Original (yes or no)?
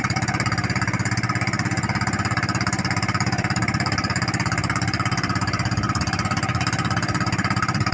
yes